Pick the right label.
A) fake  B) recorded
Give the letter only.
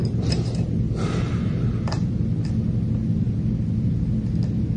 B